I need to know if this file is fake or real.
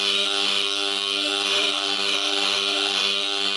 fake